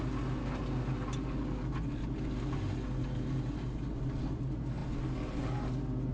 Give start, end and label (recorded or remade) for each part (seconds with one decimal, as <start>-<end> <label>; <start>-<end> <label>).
0.0-6.1 recorded